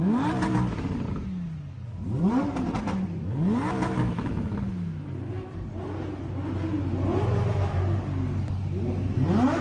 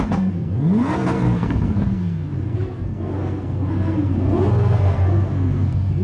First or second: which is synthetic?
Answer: second